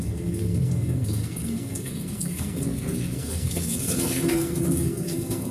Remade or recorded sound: remade